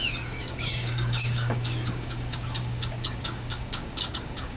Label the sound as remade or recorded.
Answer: remade